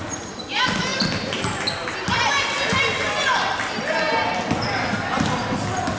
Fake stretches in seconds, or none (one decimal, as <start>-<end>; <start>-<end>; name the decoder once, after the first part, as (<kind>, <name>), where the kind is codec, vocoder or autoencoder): none